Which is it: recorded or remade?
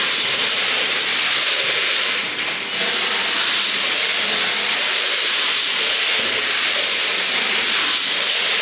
recorded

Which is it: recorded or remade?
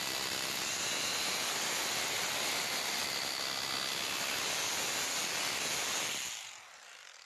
recorded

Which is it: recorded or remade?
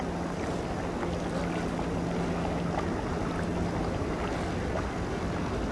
recorded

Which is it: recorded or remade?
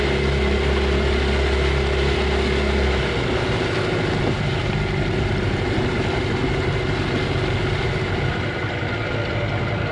recorded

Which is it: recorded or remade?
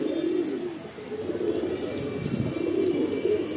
recorded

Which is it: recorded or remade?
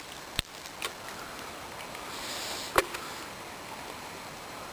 recorded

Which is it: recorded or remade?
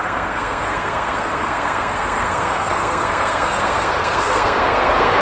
remade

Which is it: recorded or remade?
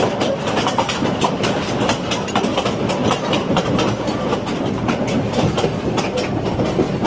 recorded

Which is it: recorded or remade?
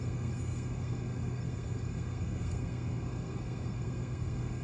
remade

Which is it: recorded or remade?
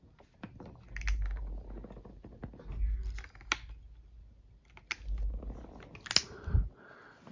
recorded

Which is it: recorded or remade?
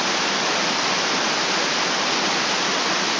recorded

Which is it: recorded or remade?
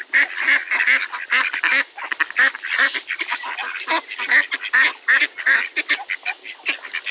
recorded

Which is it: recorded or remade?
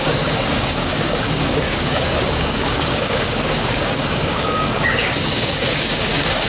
remade